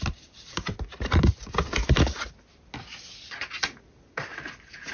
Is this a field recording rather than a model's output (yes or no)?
yes